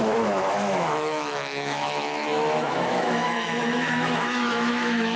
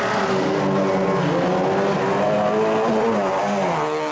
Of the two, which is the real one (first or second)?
second